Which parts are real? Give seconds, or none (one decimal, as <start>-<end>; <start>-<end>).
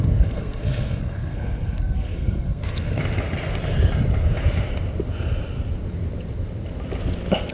3.0-7.5